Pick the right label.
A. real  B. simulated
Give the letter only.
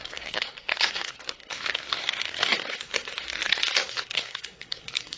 B